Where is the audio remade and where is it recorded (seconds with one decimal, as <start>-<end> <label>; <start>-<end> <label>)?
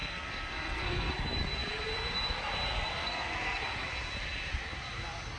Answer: 0.0-1.1 remade; 1.1-3.0 recorded; 3.0-3.6 remade; 3.6-5.4 recorded